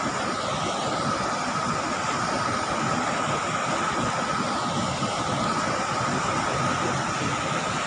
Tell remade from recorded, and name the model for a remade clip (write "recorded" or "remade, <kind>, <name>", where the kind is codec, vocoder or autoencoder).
recorded